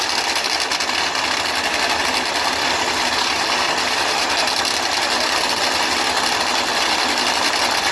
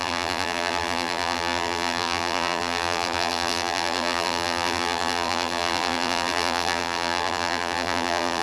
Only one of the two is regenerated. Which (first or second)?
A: second